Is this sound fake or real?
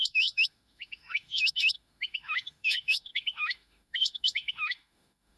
fake